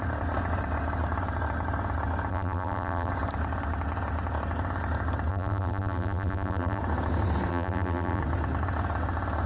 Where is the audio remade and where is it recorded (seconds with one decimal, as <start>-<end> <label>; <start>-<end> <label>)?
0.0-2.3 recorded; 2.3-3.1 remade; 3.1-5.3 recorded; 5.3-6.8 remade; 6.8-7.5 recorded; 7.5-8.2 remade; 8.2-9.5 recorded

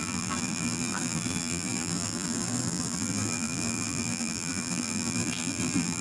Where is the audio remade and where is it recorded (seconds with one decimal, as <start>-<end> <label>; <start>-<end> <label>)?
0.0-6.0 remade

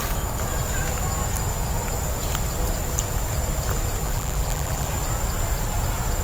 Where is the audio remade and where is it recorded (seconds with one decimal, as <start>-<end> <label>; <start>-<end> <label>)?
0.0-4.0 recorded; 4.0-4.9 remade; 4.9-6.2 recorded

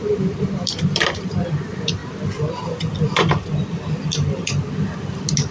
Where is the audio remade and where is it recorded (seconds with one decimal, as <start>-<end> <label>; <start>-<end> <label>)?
0.0-2.0 remade; 2.0-5.5 recorded

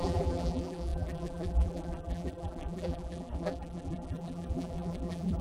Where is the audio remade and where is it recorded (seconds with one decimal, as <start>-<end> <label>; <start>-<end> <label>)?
0.0-5.4 remade